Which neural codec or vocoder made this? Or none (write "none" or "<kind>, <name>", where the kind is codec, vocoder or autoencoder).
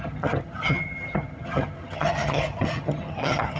vocoder, HiFi-GAN